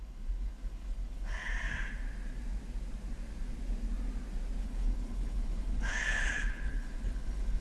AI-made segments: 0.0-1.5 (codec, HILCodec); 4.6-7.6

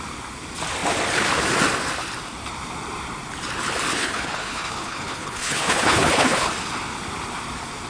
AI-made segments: 3.9-6.5 (codec, HILCodec)

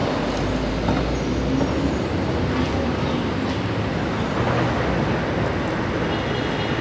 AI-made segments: none

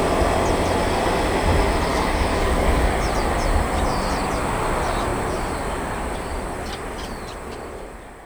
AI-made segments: 1.9-2.9 (codec, DAC)